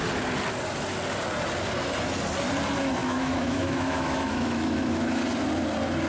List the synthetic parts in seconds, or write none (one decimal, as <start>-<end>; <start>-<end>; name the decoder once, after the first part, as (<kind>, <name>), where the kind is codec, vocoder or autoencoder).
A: 3.0-5.2 (autoencoder, DAC-VAE)